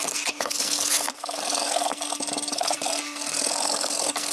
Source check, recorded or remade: remade